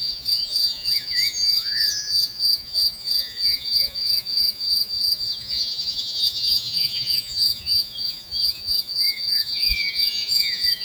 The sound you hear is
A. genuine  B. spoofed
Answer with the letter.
B